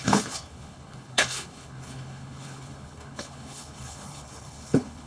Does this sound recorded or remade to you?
remade